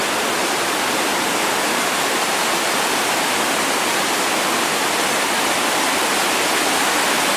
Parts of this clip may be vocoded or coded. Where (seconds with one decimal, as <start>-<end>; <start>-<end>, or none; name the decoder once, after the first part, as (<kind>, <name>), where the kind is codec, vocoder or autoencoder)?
1.1-2.6 (vocoder, BigVGAN v2)